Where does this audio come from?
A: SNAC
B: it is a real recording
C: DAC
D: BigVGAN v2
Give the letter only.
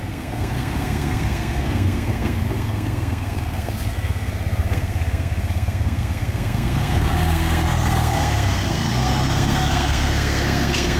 A